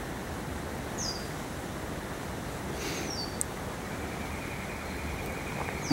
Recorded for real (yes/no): yes